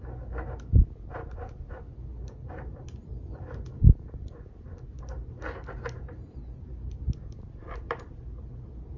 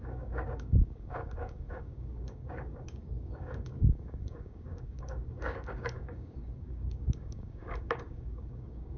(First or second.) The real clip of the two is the first